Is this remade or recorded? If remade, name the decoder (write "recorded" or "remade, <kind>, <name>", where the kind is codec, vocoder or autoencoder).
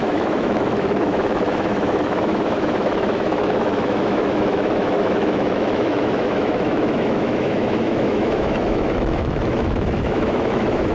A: remade, autoencoder, DAC-VAE